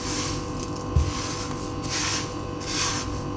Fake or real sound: real